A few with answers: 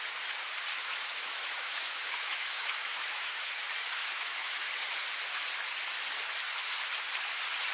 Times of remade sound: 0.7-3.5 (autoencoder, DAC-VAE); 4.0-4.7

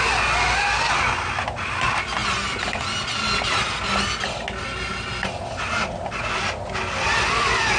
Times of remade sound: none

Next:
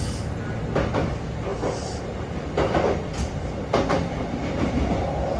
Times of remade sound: none